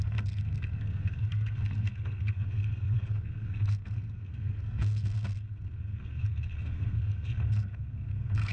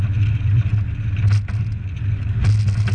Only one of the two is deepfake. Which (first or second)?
first